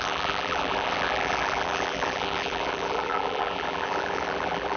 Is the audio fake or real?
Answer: fake